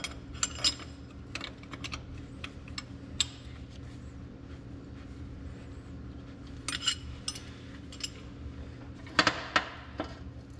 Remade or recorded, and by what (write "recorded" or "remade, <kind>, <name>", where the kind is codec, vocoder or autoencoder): recorded